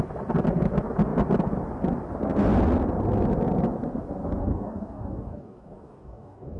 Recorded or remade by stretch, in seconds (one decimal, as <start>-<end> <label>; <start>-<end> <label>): 0.0-4.4 recorded; 4.4-6.6 remade